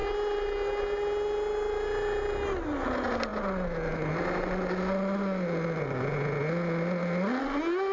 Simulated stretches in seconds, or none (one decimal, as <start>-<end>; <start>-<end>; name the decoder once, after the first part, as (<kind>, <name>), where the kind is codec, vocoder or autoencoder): none